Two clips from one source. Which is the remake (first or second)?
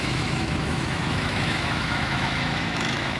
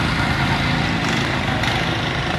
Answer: first